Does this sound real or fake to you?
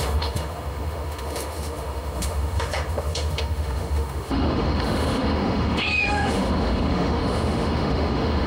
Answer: fake